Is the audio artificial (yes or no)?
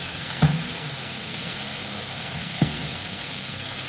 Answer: yes